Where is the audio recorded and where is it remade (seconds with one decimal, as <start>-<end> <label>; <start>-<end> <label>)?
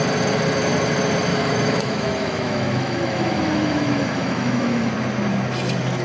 0.0-1.3 recorded; 1.3-4.9 remade; 4.9-6.0 recorded